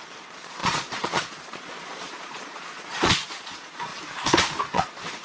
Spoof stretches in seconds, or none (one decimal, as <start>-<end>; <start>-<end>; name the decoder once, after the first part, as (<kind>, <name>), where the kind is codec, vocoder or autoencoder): 0.0-3.9 (vocoder, Vocos); 4.6-5.2